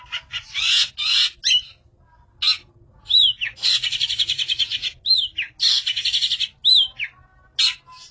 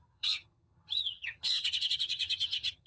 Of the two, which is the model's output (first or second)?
second